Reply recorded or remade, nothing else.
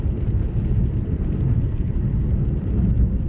recorded